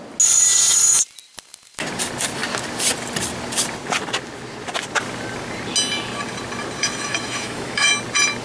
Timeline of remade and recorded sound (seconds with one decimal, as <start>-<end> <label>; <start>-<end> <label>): 0.0-6.8 recorded; 6.8-7.9 remade; 7.9-8.4 recorded